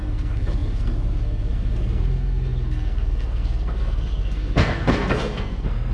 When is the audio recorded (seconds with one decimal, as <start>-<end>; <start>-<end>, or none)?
none